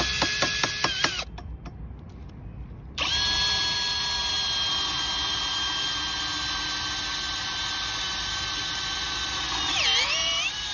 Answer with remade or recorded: recorded